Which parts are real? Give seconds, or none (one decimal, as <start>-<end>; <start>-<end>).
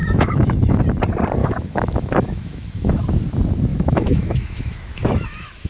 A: 0.8-1.4; 3.0-3.7